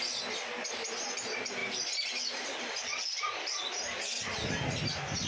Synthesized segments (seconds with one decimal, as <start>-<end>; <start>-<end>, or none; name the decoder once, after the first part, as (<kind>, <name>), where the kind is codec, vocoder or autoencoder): none